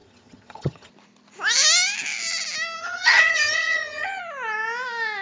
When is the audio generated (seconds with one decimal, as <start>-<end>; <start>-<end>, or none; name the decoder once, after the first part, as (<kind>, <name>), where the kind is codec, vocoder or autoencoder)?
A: 0.0-0.9 (vocoder, HiFi-GAN); 2.8-4.2